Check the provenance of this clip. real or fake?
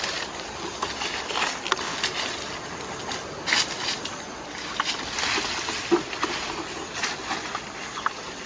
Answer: real